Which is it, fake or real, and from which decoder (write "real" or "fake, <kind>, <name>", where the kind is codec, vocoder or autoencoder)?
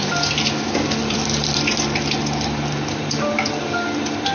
fake, vocoder, BigVGAN v2